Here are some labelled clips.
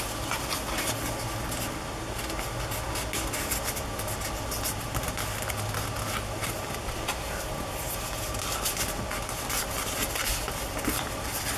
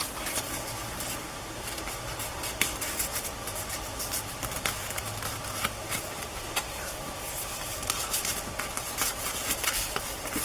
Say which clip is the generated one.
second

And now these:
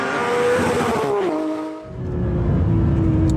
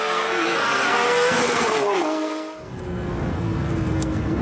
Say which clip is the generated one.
second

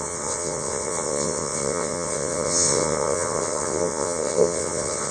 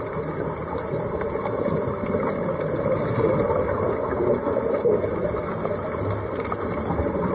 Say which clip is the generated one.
first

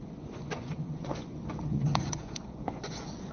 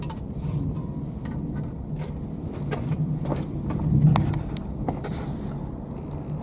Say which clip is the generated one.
first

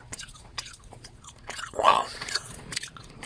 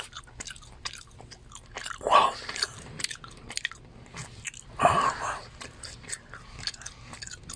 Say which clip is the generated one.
first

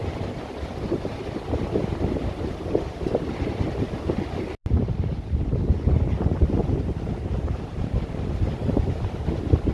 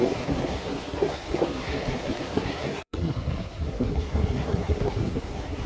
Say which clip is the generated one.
second